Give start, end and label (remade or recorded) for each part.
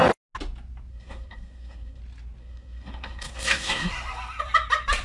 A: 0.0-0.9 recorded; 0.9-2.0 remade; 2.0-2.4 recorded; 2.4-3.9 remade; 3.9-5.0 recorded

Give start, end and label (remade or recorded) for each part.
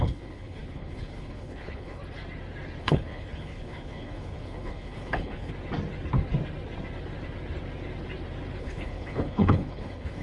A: 0.0-2.0 remade; 2.0-2.8 recorded; 2.8-5.5 remade; 5.5-8.6 recorded; 8.6-10.2 remade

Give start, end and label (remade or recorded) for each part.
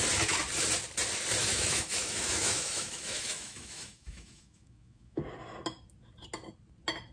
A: 0.0-1.4 recorded; 1.4-5.2 remade; 5.2-7.1 recorded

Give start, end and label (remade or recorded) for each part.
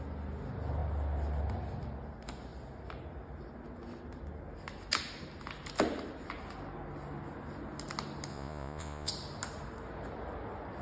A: 0.0-8.3 recorded; 8.3-9.1 remade; 9.1-10.8 recorded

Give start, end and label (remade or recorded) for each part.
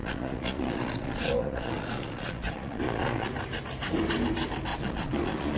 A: 0.0-3.3 remade; 3.3-4.7 recorded; 4.7-5.6 remade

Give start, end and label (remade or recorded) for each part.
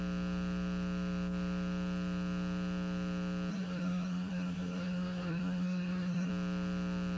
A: 0.0-3.5 recorded; 3.5-6.3 remade; 6.3-7.2 recorded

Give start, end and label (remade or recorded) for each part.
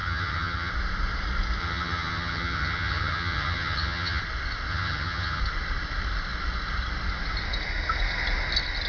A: 0.0-0.7 remade; 0.7-1.6 recorded; 1.6-4.2 remade; 4.2-4.7 recorded; 4.7-5.4 remade; 5.4-8.9 recorded